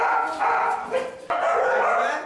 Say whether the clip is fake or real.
real